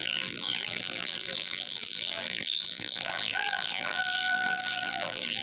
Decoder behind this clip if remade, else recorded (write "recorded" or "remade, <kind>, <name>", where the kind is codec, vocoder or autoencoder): remade, vocoder, BigVGAN v2